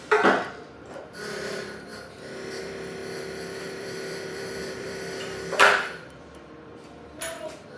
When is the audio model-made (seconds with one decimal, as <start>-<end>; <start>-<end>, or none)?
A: 0.0-1.9; 2.6-3.0; 3.6-7.8